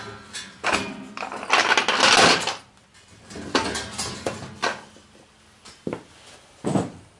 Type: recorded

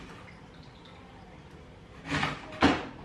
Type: recorded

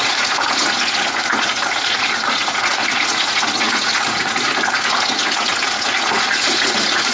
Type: remade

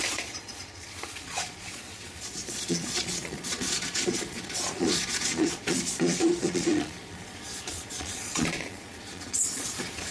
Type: remade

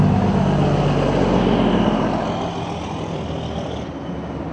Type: recorded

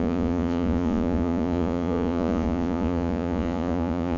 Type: remade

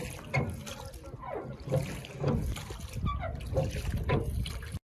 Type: recorded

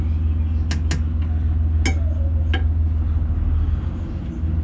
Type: recorded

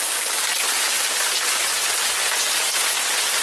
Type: recorded